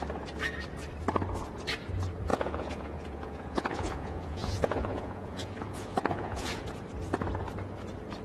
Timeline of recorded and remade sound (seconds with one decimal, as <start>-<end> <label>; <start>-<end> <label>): 0.0-2.3 recorded; 2.3-6.6 remade; 6.6-8.2 recorded